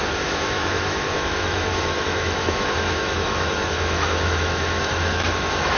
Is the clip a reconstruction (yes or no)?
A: yes